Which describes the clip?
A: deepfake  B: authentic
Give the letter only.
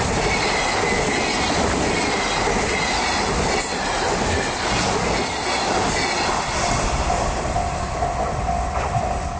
B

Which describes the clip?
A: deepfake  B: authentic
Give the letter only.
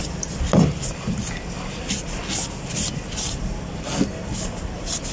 B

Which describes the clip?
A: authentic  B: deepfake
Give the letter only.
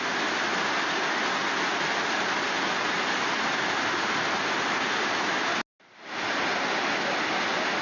A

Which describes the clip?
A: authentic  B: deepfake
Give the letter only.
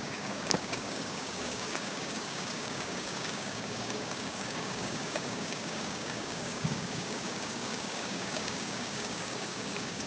B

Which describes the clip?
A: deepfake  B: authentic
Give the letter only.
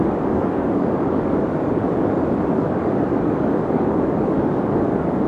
A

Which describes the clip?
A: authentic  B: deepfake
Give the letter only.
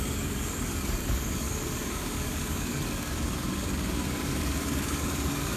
B